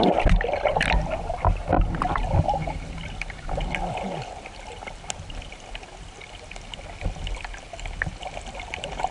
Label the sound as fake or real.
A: real